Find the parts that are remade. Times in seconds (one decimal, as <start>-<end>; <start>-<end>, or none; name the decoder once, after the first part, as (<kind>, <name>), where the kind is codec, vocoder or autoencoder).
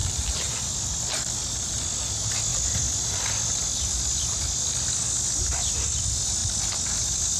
0.0-0.6 (vocoder, BigVGAN v2)